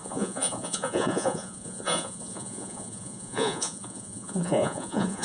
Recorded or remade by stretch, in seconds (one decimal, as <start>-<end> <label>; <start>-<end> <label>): 0.0-5.2 remade